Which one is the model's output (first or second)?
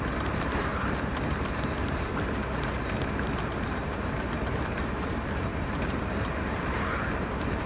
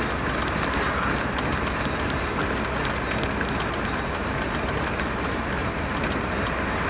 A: first